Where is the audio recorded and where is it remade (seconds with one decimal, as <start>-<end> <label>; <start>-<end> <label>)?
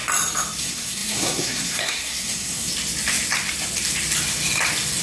0.0-0.6 recorded; 0.6-2.7 remade; 2.7-5.0 recorded